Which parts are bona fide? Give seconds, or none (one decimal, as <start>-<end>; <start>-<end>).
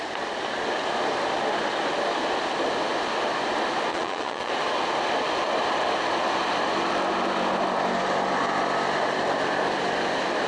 0.0-3.9; 4.5-10.5